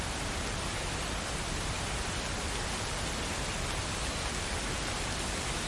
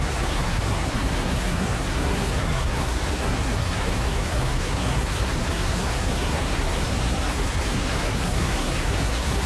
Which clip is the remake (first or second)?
second